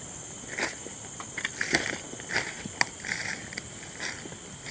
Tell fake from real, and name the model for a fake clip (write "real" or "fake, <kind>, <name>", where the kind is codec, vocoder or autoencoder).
real